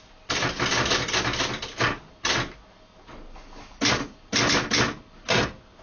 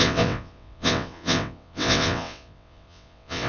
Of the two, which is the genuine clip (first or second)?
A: first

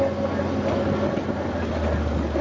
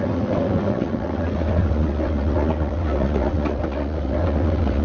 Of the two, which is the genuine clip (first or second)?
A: first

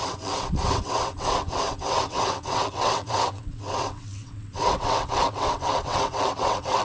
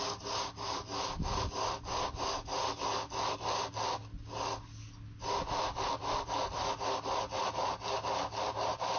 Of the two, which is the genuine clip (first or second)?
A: second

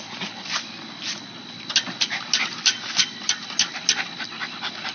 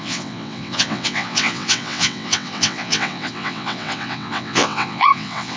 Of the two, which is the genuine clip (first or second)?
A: first